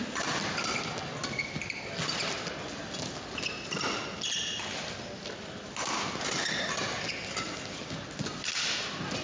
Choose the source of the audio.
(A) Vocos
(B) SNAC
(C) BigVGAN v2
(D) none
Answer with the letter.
D